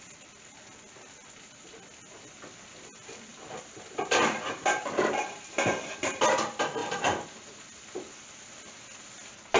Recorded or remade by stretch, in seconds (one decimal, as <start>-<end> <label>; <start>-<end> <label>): 0.0-3.3 recorded; 3.3-6.2 remade; 6.2-6.8 recorded; 6.8-7.8 remade; 7.8-9.6 recorded